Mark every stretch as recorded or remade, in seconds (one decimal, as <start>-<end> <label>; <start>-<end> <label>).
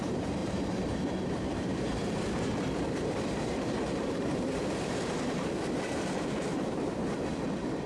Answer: 0.0-7.9 remade